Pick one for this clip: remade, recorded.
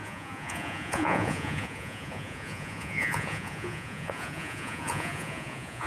remade